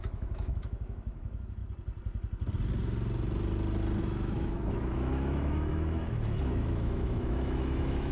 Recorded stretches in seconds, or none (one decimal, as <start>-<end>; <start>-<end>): 1.6-4.0